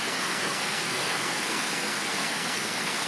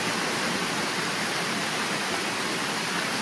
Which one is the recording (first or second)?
second